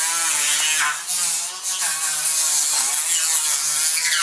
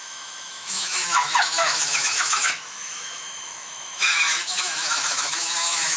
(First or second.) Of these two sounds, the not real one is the second